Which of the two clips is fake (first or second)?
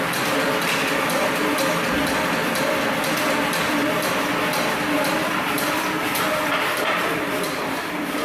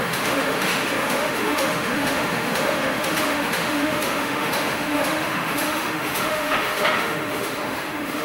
second